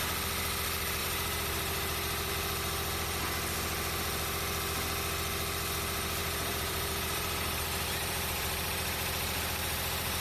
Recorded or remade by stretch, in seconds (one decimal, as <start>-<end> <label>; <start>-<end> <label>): 0.0-1.0 recorded; 1.0-2.3 remade; 2.3-6.2 recorded; 6.2-10.2 remade